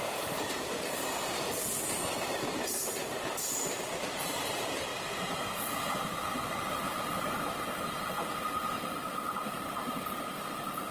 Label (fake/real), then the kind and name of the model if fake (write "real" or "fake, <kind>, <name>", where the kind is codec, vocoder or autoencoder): fake, vocoder, BigVGAN v2